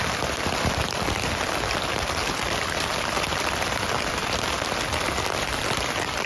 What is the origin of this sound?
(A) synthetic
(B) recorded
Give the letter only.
A